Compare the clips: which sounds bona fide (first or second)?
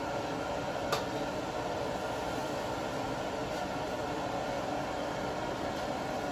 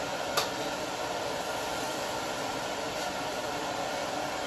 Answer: first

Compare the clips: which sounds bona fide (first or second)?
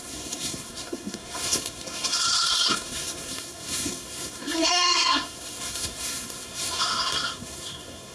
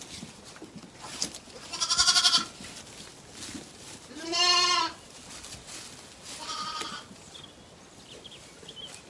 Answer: second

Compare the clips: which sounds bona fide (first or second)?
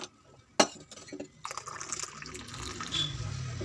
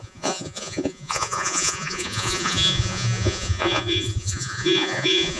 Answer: first